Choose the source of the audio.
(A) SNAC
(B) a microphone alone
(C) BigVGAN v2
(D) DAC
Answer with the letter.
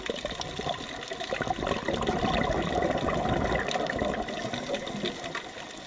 B